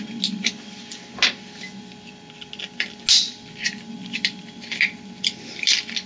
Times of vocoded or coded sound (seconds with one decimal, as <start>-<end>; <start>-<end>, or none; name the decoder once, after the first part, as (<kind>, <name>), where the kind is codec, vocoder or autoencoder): none